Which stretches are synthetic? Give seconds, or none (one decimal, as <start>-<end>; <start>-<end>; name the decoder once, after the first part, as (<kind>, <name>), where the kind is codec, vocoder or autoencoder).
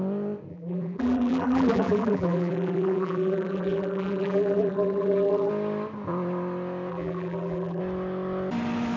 0.5-5.5 (vocoder, BigVGAN v2); 6.9-7.8